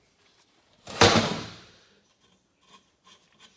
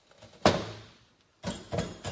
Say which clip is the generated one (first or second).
first